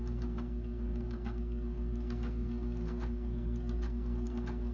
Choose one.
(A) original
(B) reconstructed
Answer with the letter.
B